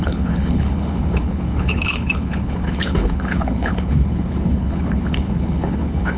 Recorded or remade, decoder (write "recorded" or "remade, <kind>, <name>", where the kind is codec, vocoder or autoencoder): remade, codec, HILCodec